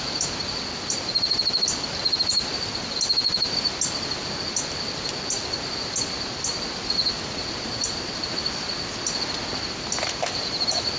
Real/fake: real